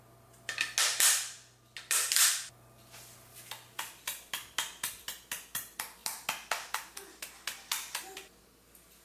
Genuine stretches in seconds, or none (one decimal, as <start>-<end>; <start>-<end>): 0.0-9.0